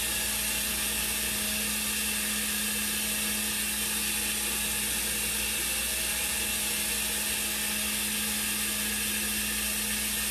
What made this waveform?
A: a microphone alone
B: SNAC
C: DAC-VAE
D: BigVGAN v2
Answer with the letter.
A